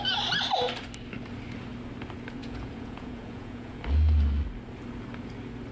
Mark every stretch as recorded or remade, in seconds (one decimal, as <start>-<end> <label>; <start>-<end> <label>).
0.0-2.4 recorded; 2.4-3.8 remade; 3.8-5.7 recorded